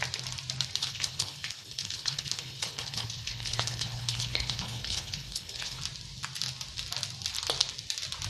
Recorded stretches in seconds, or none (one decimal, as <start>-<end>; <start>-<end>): 0.0-0.8; 5.8-8.3